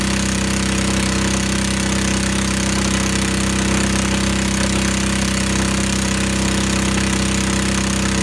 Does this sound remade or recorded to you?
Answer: recorded